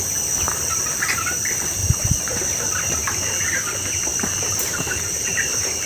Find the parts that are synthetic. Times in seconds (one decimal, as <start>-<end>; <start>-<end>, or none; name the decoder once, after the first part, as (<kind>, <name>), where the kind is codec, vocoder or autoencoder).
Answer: 1.8-2.4 (vocoder, BigVGAN v2); 3.0-3.6; 4.1-5.9